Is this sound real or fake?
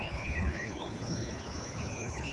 fake